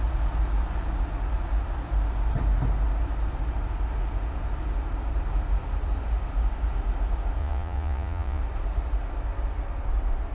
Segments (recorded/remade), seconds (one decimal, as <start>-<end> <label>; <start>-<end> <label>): 0.0-7.4 recorded; 7.4-8.4 remade; 8.4-10.3 recorded